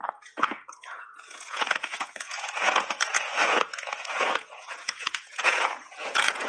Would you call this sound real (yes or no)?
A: no